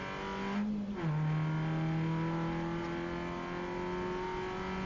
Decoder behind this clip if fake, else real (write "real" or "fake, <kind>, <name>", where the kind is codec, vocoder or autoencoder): real